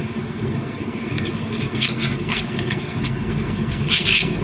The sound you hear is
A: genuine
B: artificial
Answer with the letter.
B